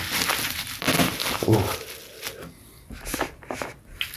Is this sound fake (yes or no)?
no